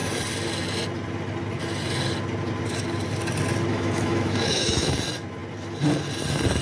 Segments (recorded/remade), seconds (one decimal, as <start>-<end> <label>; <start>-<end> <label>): 0.0-3.7 recorded; 3.7-4.9 remade; 4.9-6.6 recorded